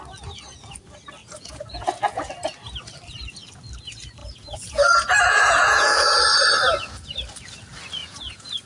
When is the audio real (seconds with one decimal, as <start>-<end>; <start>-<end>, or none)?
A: 0.0-1.2; 2.3-4.2; 6.2-8.0